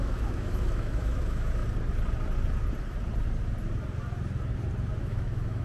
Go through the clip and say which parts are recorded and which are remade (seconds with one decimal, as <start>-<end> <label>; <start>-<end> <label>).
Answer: 0.0-1.6 remade; 1.6-5.0 recorded; 5.0-5.6 remade